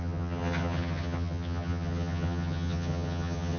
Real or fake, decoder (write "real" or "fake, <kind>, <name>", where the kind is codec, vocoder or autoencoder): fake, vocoder, HiFi-GAN